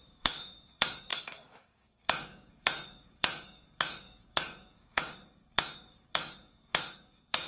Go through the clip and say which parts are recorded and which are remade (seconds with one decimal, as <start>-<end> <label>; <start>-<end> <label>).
0.0-7.5 remade